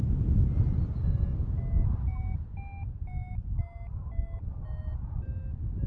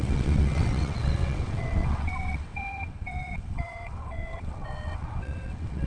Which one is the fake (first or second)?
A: second